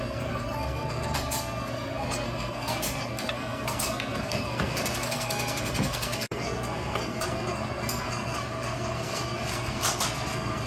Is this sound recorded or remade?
remade